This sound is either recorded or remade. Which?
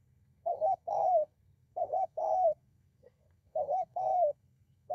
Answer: remade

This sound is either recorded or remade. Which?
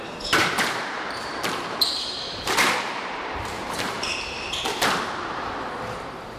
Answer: remade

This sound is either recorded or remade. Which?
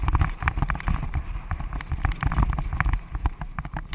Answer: recorded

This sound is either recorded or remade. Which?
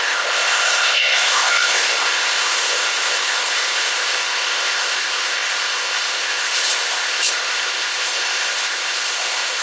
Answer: remade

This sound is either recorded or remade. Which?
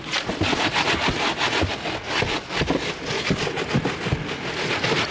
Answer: recorded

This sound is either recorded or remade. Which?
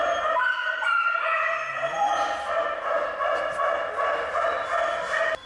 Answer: recorded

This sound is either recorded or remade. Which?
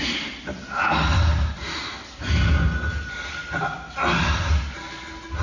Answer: recorded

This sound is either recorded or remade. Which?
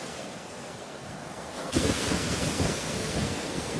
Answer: remade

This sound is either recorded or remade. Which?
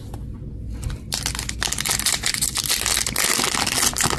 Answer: recorded